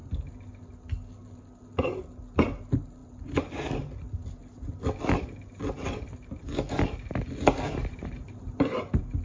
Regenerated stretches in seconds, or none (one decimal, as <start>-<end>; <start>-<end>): 7.8-8.6